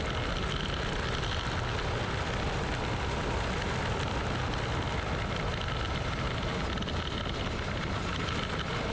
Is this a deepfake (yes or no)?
no